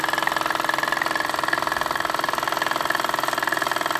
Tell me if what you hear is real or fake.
real